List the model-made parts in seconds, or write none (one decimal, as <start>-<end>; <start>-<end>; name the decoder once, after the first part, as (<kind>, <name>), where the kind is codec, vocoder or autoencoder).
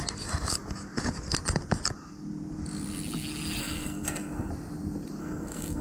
3.6-4.5 (codec, SNAC); 5.2-5.8